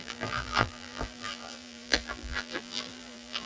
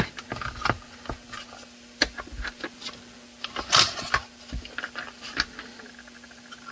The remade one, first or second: first